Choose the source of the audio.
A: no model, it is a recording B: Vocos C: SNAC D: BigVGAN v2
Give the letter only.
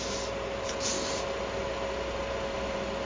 A